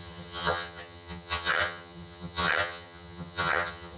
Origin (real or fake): fake